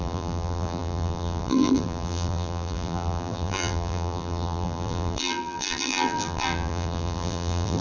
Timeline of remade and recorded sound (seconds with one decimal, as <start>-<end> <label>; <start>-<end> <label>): 0.0-7.8 remade